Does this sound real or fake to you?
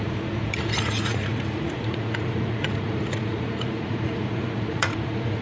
fake